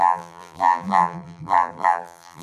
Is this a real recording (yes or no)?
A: no